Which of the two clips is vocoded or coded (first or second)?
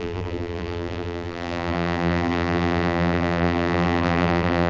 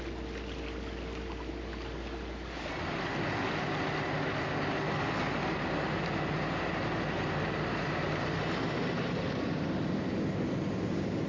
first